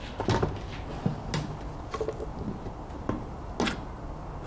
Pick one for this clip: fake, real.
real